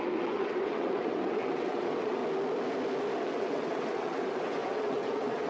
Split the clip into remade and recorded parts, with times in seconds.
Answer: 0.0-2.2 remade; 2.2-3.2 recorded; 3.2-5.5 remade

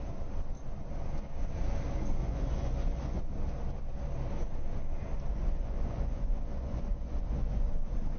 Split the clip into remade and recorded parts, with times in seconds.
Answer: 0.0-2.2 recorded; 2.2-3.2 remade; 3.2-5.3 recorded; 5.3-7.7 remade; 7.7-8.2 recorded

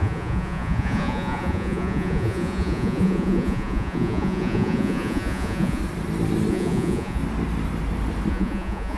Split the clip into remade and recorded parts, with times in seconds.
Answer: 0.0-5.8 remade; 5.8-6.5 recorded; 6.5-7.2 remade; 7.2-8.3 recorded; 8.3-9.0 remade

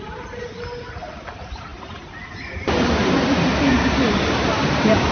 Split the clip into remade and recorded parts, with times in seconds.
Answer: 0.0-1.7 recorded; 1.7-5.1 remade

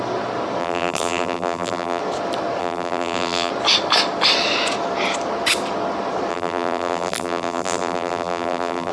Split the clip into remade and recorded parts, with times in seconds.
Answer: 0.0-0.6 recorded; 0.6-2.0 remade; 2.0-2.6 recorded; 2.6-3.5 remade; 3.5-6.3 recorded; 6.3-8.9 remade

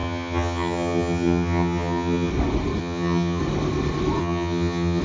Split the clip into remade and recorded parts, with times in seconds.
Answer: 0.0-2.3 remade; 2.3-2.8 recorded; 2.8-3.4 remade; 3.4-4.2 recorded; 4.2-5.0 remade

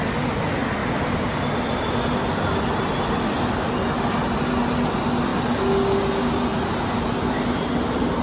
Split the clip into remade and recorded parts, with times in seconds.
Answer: 0.0-8.2 recorded

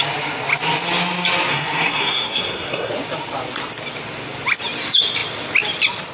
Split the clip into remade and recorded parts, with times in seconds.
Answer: 0.0-1.5 recorded; 1.5-2.9 remade; 2.9-6.1 recorded